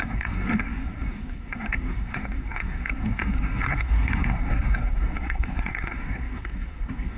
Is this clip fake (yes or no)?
yes